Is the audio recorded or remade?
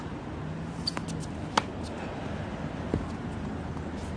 recorded